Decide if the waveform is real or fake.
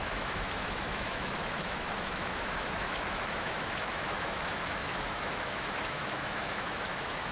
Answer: fake